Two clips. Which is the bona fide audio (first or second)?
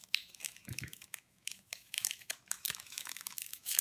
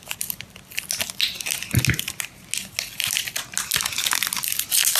second